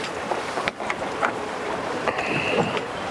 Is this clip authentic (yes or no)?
no